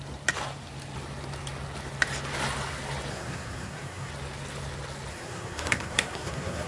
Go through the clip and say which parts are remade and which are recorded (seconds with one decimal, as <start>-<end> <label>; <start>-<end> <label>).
0.0-3.1 recorded; 3.1-4.1 remade; 4.1-5.1 recorded; 5.1-6.7 remade